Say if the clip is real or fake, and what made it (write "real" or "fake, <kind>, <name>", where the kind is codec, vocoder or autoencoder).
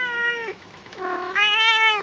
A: fake, autoencoder, DAC-VAE